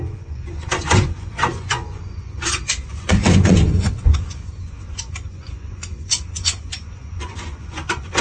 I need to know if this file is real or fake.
fake